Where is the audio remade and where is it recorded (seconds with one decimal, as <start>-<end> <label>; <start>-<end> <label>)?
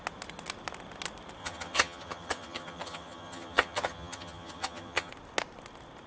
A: 0.0-1.4 recorded; 1.4-5.1 remade; 5.1-6.1 recorded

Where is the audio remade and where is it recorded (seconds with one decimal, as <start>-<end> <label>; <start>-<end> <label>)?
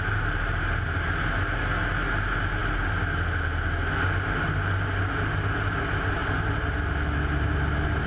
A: 0.0-8.1 recorded